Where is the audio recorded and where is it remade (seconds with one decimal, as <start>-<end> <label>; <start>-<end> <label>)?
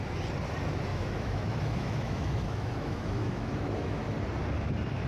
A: 0.0-0.9 recorded; 0.9-4.0 remade; 4.0-5.1 recorded